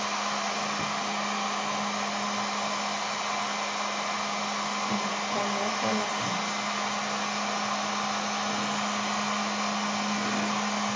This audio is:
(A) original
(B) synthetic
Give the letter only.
A